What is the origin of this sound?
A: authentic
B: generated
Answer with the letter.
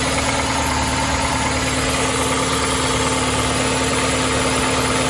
A